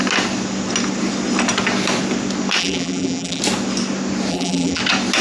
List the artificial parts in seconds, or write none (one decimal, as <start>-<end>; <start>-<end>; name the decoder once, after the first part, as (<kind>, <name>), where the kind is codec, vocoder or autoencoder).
2.6-3.4 (vocoder, BigVGAN v2); 4.3-4.8